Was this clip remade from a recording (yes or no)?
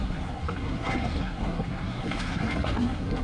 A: yes